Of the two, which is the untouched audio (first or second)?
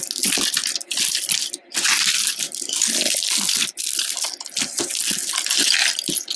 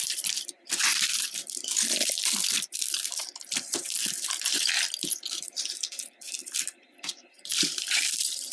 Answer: first